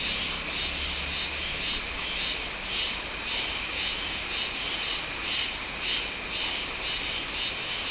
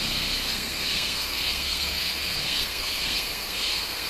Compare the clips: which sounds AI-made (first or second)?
second